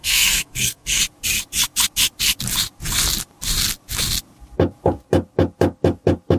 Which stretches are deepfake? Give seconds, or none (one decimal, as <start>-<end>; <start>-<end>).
0.0-1.0